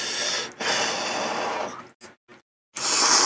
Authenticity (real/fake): real